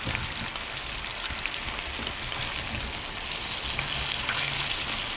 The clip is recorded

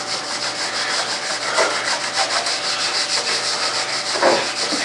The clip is recorded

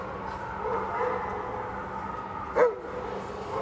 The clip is recorded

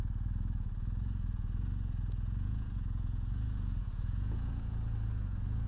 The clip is remade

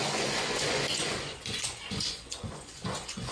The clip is remade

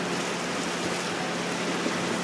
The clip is recorded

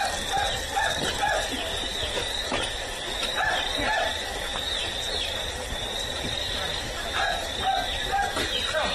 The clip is remade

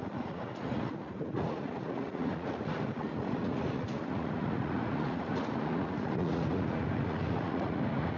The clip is remade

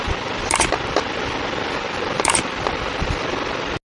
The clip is recorded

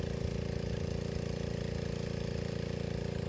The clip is recorded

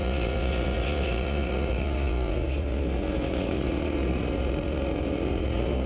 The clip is remade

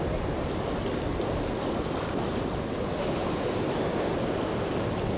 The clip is recorded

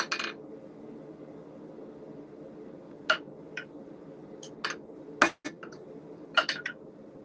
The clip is recorded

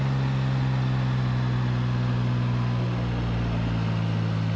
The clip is recorded